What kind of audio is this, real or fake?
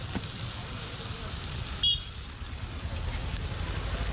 real